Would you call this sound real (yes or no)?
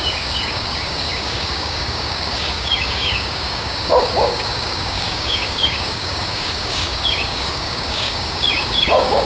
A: no